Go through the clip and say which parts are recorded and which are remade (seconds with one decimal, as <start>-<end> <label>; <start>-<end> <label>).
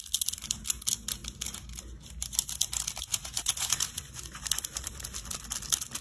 0.0-3.1 recorded; 3.1-4.4 remade; 4.4-6.0 recorded